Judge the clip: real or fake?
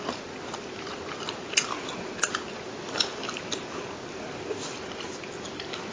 real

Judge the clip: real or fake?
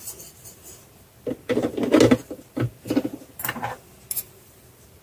real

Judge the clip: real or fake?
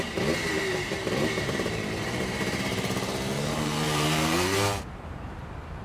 fake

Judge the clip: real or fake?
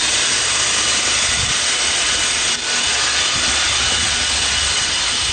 real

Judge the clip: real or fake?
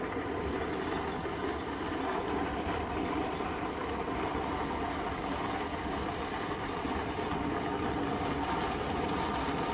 fake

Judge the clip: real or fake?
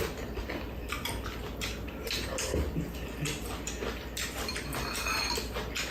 real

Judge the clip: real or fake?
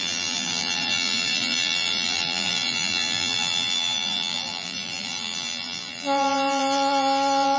fake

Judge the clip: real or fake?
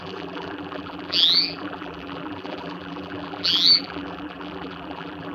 fake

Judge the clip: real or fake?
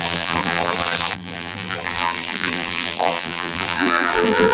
fake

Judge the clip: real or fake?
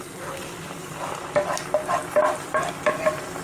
fake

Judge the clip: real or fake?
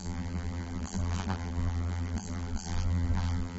fake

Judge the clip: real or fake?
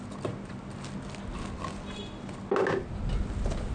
real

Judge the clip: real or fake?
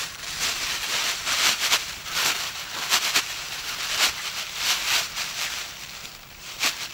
fake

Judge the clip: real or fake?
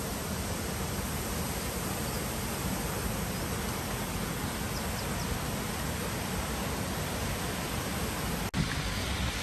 real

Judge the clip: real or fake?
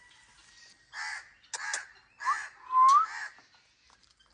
real